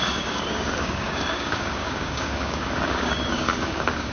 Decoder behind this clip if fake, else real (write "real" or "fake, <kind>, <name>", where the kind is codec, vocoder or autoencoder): fake, codec, DAC